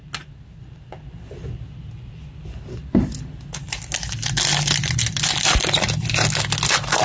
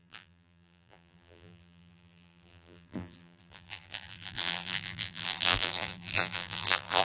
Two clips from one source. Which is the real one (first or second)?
first